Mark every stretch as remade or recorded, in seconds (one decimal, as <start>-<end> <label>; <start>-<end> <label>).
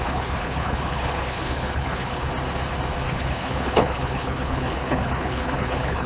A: 0.0-2.3 remade; 2.3-3.1 recorded; 3.1-6.1 remade